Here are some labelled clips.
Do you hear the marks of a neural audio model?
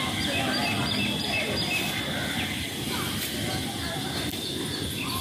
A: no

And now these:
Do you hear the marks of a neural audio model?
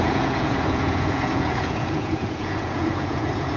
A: yes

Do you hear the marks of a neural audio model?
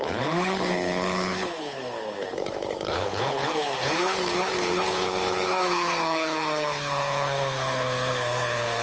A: yes